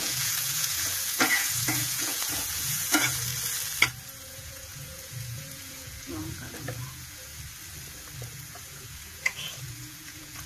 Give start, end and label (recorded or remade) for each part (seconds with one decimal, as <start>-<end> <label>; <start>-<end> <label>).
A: 0.0-3.3 remade; 3.3-4.3 recorded; 4.3-7.3 remade; 7.3-8.2 recorded; 8.2-10.5 remade